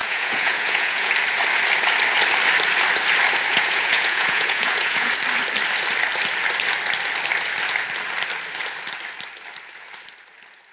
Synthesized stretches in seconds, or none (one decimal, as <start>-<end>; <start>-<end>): 0.0-1.1; 3.5-5.1